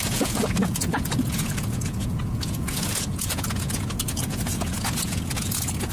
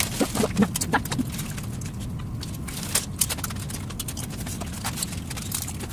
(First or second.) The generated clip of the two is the first